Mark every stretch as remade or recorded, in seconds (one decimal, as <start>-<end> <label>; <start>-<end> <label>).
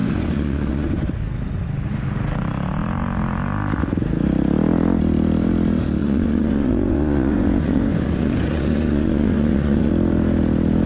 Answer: 0.0-1.1 remade; 1.1-6.0 recorded; 6.0-9.9 remade; 9.9-10.9 recorded